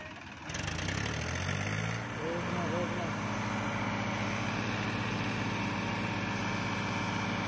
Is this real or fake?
real